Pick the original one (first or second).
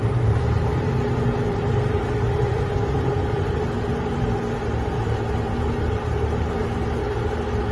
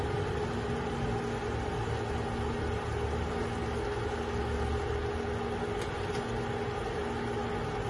second